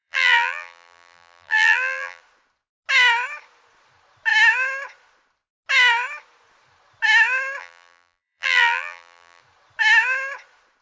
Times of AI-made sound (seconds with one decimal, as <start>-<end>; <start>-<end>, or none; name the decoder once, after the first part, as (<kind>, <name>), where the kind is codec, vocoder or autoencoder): 0.0-2.2 (vocoder, BigVGAN v2); 7.6-9.4